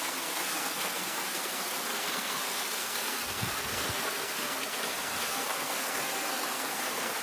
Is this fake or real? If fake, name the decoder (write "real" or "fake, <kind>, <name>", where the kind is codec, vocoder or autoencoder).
fake, codec, SNAC